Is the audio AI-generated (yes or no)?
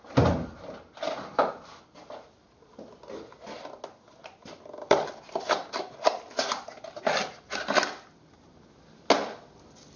no